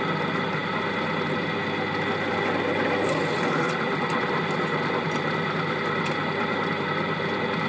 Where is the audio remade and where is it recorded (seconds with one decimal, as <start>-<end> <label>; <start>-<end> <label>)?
0.0-7.7 recorded